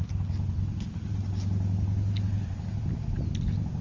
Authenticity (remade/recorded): recorded